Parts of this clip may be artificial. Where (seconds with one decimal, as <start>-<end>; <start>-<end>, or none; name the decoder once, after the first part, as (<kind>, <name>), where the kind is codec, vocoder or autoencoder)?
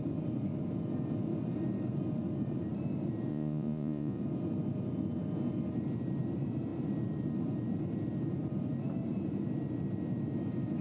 3.3-4.2 (vocoder, Vocos)